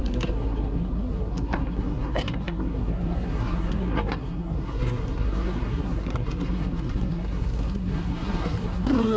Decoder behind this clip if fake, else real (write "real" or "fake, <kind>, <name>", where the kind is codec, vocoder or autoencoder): fake, codec, SNAC